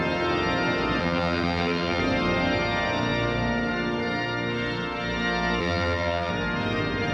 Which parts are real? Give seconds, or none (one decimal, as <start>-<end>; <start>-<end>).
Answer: 0.0-1.0; 2.0-5.6; 6.3-7.1